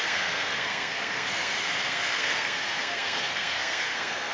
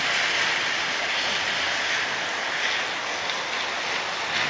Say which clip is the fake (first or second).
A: first